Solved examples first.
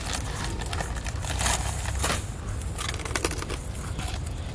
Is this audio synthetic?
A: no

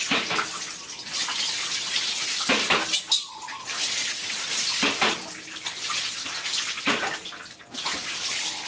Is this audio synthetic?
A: no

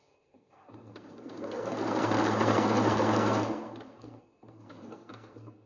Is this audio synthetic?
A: yes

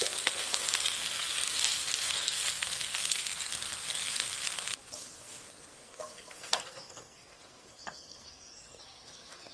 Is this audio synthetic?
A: yes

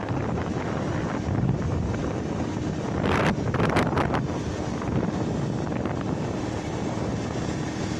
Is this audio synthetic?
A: no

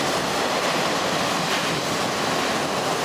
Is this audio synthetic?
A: no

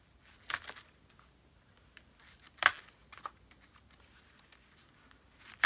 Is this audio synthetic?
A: no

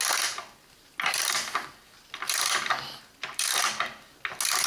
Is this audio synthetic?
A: no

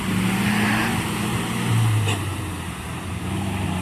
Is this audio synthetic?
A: no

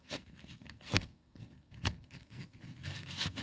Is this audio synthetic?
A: yes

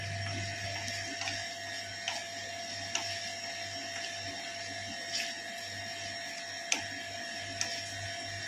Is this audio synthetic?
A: no